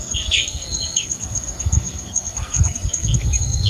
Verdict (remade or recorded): remade